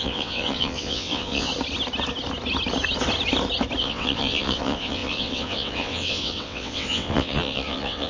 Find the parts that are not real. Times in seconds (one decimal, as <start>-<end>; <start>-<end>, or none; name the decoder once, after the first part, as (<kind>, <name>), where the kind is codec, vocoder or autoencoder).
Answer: 0.0-1.5 (vocoder, WaveNeXt); 3.8-8.1